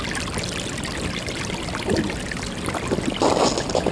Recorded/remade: recorded